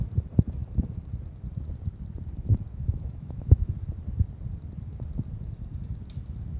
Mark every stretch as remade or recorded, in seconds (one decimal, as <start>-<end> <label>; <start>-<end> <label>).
0.0-2.7 recorded; 2.7-3.7 remade; 3.7-6.6 recorded